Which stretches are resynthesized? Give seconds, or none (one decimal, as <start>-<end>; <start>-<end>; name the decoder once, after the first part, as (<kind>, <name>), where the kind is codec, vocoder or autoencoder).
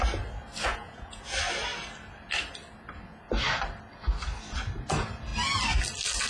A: 0.7-1.2 (vocoder, Vocos)